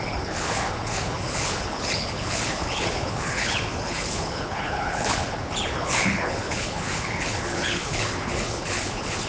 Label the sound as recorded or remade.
remade